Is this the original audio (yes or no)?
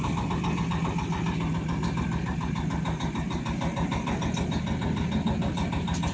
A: yes